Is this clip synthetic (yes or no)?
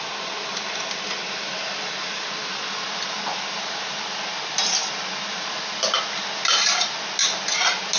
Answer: no